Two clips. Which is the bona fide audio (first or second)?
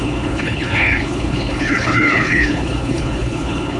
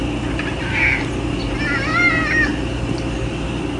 second